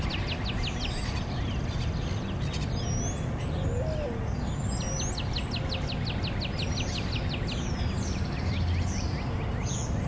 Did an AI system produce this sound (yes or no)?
no